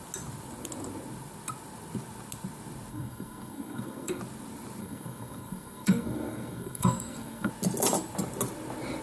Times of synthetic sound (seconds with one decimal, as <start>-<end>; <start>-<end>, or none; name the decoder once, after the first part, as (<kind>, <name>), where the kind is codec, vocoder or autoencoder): 2.9-4.2 (codec, SNAC); 4.8-7.5